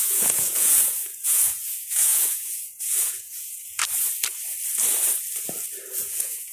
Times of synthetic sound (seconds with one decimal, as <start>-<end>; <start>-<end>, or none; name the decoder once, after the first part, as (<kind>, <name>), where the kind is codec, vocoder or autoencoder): 0.0-3.8 (vocoder, Vocos); 6.0-6.5